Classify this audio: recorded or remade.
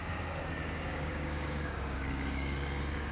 remade